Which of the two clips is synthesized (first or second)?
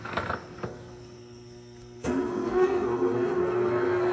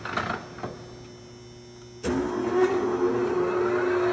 first